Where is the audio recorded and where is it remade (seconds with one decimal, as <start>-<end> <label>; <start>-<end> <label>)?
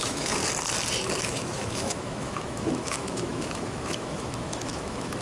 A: 0.0-0.4 remade; 0.4-1.2 recorded; 1.2-5.2 remade